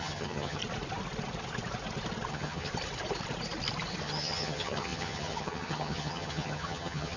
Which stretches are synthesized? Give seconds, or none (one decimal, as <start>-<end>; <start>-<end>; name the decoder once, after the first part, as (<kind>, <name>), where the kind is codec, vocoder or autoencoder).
0.0-0.6 (vocoder, HiFi-GAN); 2.3-2.7; 4.0-7.2